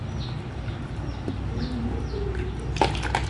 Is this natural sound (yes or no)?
yes